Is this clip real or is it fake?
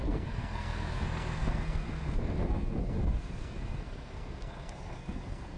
fake